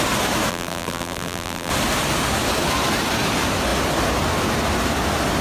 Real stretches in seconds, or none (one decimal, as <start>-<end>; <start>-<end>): 0.0-0.5; 1.7-5.4